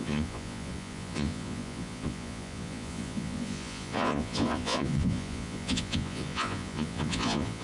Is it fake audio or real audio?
fake